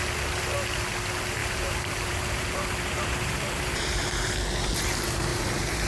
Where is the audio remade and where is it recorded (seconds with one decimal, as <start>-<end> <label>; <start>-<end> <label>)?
0.0-1.4 recorded; 1.4-4.3 remade; 4.3-5.3 recorded; 5.3-5.9 remade